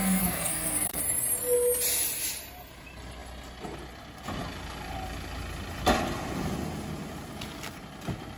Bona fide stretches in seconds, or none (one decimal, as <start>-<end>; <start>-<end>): 1.0-8.4